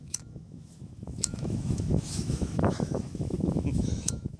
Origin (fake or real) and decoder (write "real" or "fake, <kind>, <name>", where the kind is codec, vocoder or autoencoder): fake, autoencoder, DAC-VAE